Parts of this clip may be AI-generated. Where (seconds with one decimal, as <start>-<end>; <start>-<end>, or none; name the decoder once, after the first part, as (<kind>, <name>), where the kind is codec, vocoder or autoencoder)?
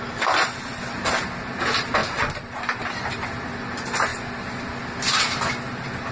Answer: none